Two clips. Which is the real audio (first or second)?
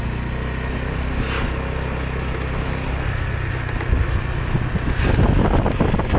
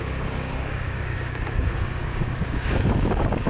first